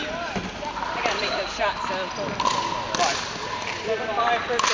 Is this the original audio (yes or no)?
yes